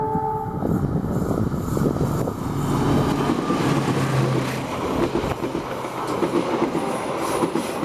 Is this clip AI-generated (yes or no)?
no